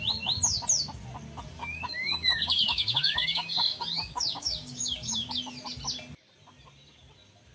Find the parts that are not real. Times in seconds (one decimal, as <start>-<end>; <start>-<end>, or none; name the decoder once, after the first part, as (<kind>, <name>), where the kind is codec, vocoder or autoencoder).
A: 1.6-5.4 (codec, DAC)